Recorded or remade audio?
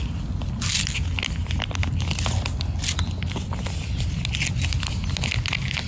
recorded